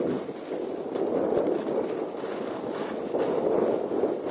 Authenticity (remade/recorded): recorded